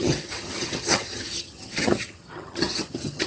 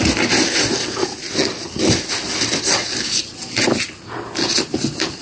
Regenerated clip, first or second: first